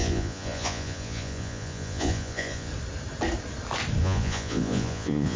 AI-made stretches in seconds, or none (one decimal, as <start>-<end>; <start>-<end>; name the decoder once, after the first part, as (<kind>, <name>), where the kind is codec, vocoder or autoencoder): 0.0-2.7 (vocoder, Vocos); 4.0-5.4